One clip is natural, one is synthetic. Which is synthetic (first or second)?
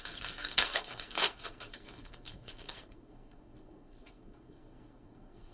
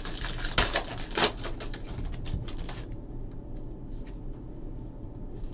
first